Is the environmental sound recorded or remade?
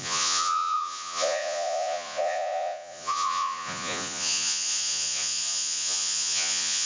remade